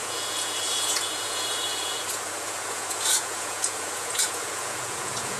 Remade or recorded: remade